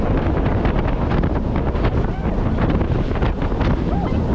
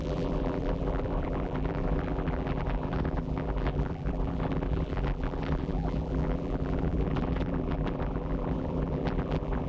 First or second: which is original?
first